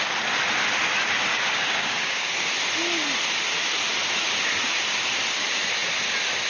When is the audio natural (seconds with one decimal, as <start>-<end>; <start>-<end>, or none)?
0.0-1.3; 2.5-6.5